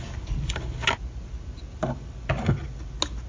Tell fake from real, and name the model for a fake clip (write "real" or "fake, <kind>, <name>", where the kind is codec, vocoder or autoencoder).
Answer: real